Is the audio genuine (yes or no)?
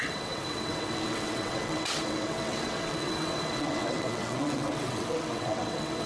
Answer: no